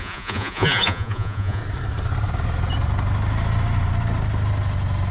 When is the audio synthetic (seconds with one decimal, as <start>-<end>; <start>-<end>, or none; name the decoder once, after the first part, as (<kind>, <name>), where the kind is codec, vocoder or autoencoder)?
0.0-1.6 (vocoder, Vocos)